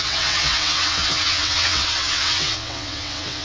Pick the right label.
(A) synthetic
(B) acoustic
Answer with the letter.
A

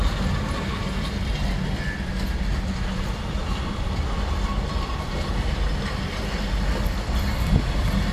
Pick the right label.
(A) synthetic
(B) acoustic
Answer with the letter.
B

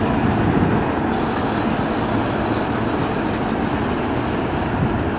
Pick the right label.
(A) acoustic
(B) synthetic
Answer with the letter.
A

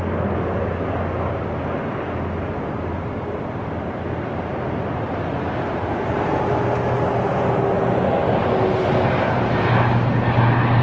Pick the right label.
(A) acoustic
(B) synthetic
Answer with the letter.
A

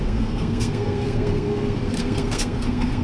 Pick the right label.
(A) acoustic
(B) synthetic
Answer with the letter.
B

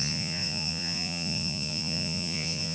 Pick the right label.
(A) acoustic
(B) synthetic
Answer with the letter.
B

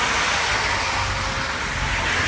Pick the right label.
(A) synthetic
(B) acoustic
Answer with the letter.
B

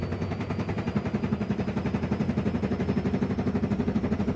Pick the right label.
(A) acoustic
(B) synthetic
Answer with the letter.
A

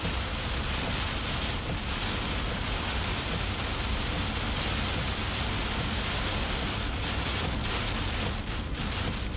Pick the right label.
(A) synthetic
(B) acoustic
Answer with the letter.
B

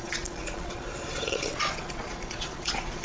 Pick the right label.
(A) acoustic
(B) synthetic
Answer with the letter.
B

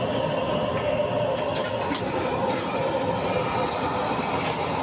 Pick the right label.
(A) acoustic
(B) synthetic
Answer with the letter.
A